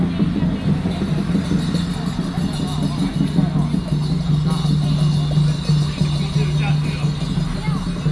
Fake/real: real